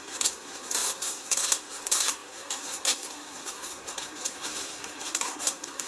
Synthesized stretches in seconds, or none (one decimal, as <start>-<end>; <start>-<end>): 0.0-5.9